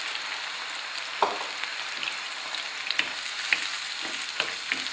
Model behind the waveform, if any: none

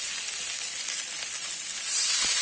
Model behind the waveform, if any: none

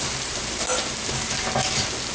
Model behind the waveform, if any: none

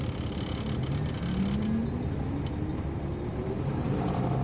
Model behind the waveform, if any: none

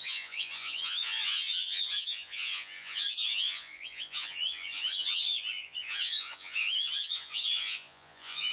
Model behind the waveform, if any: vocoder, Vocos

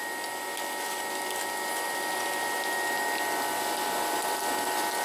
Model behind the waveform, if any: none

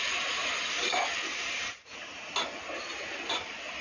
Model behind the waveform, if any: none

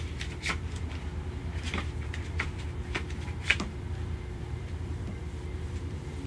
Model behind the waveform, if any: vocoder, BigVGAN v2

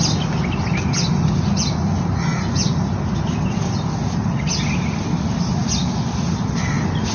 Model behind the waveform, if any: none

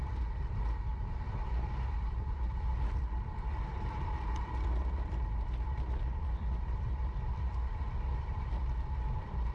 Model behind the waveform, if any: vocoder, BigVGAN v2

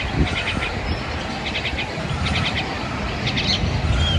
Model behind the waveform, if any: none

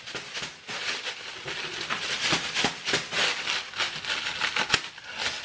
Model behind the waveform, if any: none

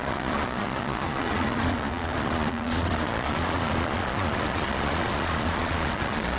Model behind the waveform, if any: vocoder, Vocos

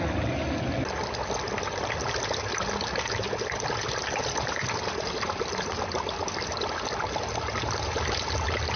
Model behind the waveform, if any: none